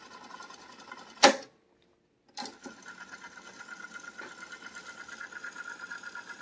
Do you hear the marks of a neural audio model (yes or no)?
no